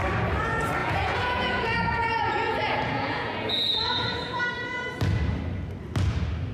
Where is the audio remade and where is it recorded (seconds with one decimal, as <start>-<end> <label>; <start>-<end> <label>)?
0.0-0.8 recorded; 0.8-4.4 remade; 4.4-6.5 recorded

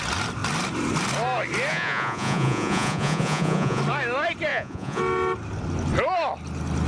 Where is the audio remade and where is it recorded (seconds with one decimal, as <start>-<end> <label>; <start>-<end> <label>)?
0.0-1.7 recorded; 1.7-3.8 remade; 3.8-4.5 recorded; 4.5-5.0 remade; 5.0-6.9 recorded